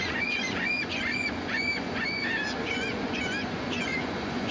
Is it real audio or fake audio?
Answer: fake